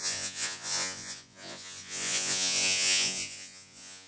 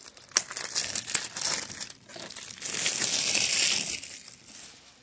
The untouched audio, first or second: second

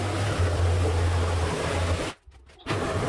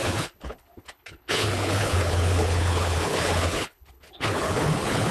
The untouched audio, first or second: first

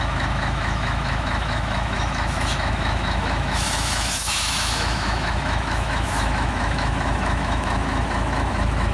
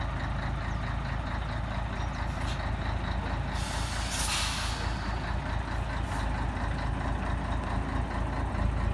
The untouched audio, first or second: second